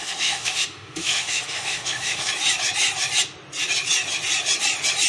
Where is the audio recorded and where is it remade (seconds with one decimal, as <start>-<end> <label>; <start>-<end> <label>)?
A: 0.0-2.3 remade; 2.3-5.1 recorded